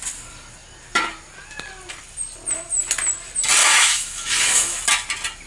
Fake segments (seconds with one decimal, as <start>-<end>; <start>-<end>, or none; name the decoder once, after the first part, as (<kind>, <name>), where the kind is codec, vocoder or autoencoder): 3.6-4.8 (autoencoder, DAC-VAE)